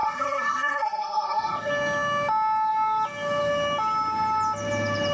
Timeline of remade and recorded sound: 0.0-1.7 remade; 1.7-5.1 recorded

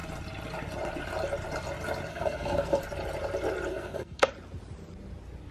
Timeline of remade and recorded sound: 0.0-2.1 recorded; 2.1-2.8 remade; 2.8-3.7 recorded; 3.7-4.3 remade; 4.3-5.5 recorded

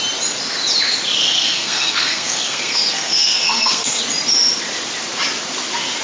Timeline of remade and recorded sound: 0.0-1.2 recorded; 1.2-4.0 remade; 4.0-6.0 recorded